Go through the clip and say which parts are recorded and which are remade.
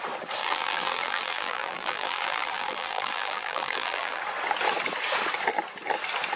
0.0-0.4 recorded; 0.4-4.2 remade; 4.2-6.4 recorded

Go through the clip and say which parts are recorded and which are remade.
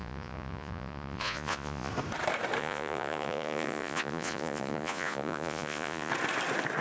0.0-1.9 remade; 1.9-2.6 recorded; 2.6-6.1 remade; 6.1-6.8 recorded